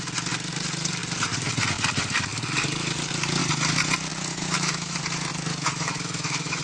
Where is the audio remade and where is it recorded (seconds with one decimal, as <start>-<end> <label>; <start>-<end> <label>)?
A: 0.0-4.3 recorded; 4.3-5.0 remade; 5.0-5.5 recorded; 5.5-6.6 remade